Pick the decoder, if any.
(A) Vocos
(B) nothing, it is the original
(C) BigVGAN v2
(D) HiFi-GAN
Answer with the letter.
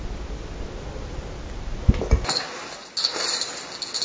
B